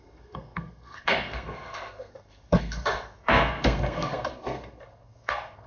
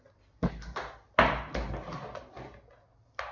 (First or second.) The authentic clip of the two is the second